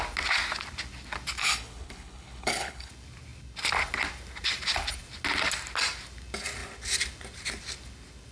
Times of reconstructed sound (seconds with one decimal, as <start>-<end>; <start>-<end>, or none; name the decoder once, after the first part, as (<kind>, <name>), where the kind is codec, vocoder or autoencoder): 1.4-2.9 (codec, HILCodec)